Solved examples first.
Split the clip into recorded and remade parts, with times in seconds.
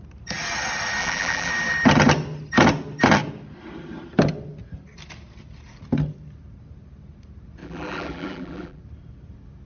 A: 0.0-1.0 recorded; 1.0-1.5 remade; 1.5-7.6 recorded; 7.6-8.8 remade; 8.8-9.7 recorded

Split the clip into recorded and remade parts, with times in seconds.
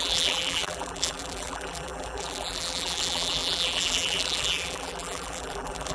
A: 0.0-5.9 remade